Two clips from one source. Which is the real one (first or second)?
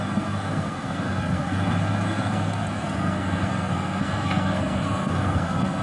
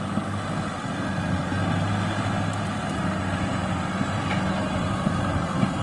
second